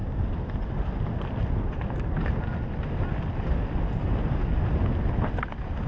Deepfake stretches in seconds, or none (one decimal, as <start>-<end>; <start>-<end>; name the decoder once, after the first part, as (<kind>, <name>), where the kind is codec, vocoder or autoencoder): none